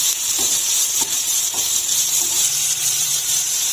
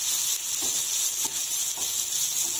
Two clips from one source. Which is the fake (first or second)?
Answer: first